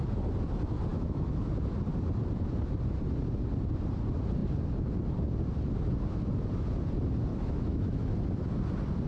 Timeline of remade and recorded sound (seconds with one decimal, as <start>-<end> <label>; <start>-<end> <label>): 0.0-0.9 recorded; 0.9-1.4 remade; 1.4-7.3 recorded; 7.3-8.1 remade; 8.1-9.1 recorded